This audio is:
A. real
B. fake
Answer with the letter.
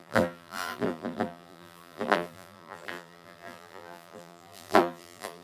B